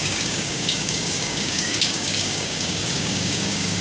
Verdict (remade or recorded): remade